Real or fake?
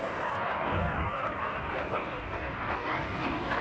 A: fake